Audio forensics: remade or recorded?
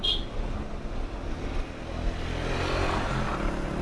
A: recorded